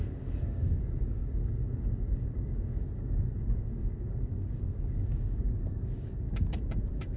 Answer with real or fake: fake